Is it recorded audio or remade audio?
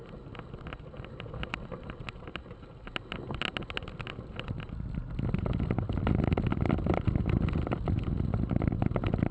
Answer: recorded